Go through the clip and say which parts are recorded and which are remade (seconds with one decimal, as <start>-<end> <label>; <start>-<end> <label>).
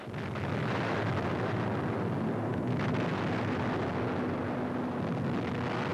0.0-5.9 recorded